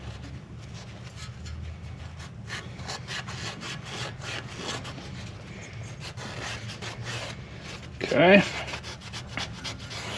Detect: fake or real real